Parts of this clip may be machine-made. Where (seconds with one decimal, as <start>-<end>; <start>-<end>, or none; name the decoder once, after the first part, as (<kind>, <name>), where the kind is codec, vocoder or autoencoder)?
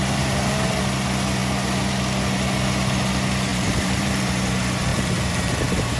0.0-0.8 (vocoder, BigVGAN v2); 3.5-4.3; 4.9-5.5